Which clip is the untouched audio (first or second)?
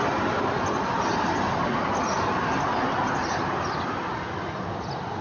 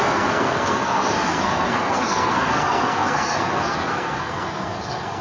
first